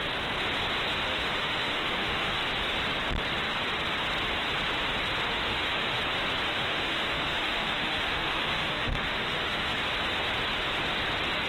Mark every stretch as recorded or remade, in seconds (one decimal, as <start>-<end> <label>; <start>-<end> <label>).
0.0-1.1 recorded; 1.1-2.4 remade; 2.4-5.3 recorded; 5.3-6.0 remade; 6.0-6.5 recorded; 6.5-9.7 remade; 9.7-11.5 recorded